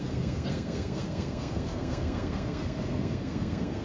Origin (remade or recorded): remade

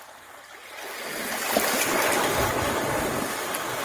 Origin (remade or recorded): recorded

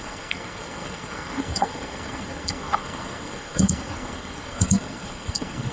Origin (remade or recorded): remade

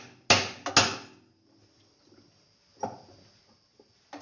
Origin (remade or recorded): recorded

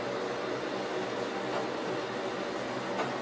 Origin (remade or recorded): recorded